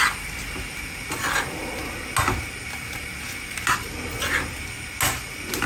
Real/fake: real